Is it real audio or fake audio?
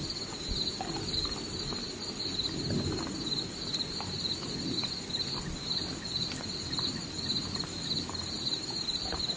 real